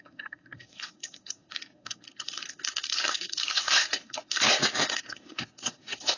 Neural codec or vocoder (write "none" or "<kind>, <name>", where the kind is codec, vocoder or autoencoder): codec, SNAC